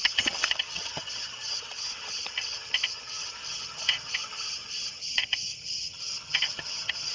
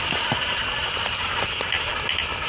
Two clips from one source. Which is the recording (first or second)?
second